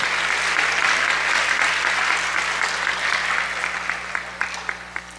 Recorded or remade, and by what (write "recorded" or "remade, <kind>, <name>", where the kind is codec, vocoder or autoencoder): recorded